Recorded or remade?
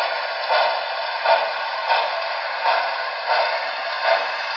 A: recorded